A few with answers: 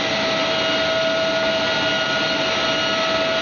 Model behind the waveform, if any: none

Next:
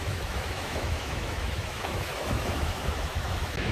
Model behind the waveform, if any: autoencoder, DAC-VAE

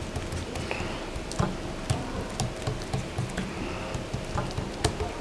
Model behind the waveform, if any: none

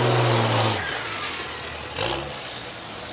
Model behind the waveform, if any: none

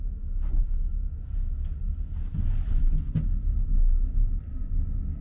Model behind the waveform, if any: none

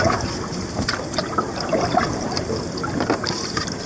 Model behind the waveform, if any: none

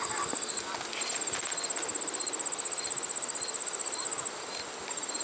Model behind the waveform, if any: none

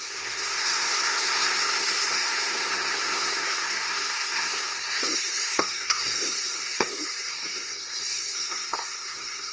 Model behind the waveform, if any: codec, SNAC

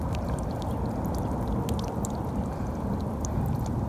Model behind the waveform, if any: none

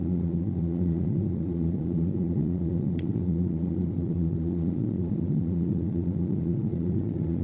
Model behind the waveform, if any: vocoder, Vocos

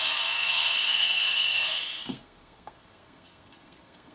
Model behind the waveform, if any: codec, SNAC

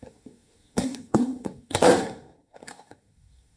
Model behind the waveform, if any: codec, SNAC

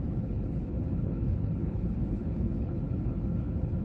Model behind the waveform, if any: codec, HILCodec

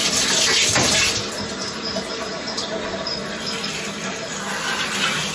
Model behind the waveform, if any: none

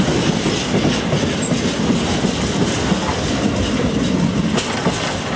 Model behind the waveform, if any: none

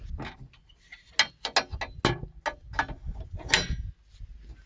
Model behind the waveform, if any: none